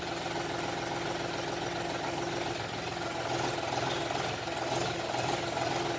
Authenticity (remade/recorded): recorded